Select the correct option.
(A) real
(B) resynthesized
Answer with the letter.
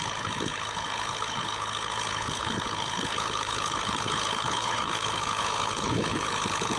B